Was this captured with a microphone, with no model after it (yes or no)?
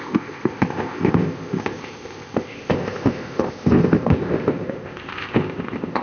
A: no